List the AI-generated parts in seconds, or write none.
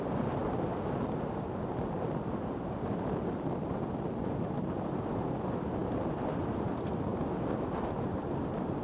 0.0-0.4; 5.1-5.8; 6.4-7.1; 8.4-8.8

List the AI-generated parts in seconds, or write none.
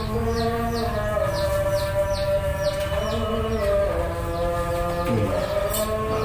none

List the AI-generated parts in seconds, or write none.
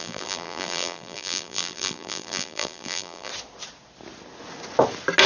0.0-3.3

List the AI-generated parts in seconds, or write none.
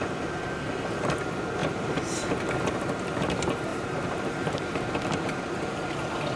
1.6-2.4; 3.7-5.7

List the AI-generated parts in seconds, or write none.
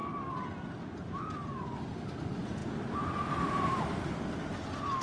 none